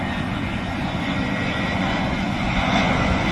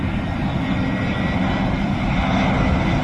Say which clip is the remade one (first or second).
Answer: first